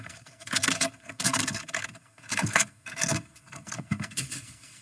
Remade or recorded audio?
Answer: remade